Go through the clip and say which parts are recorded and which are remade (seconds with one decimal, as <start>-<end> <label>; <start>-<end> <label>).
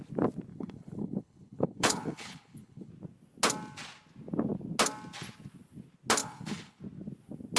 0.0-0.5 recorded; 0.5-2.9 remade; 2.9-6.2 recorded; 6.2-6.8 remade; 6.8-7.6 recorded